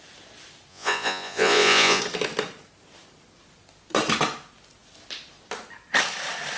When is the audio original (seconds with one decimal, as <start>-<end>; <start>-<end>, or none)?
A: 0.0-0.7; 2.0-6.6